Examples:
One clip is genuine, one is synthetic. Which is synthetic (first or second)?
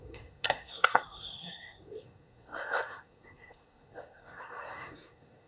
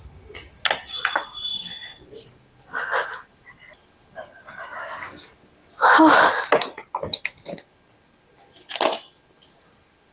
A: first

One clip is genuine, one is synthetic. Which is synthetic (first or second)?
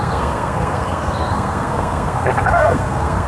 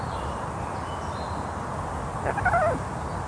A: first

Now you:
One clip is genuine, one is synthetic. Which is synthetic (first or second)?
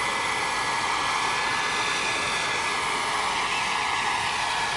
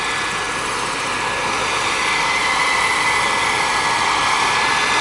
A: second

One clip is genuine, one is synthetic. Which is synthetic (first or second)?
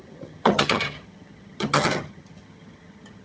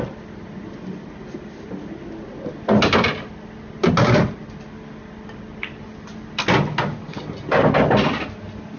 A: first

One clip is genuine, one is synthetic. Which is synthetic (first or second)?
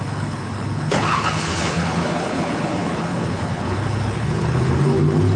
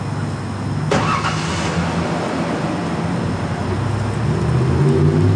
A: first